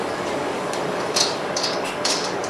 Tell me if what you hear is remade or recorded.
remade